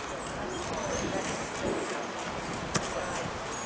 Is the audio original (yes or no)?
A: yes